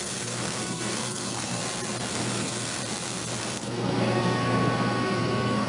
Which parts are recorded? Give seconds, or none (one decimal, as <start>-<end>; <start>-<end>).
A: 1.6-2.1; 2.8-3.4